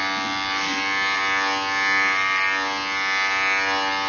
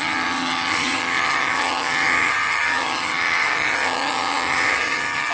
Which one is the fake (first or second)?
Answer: second